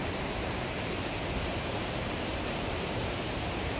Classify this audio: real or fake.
fake